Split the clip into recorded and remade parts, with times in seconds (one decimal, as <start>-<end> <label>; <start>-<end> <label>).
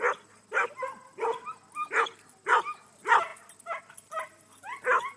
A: 0.0-5.2 recorded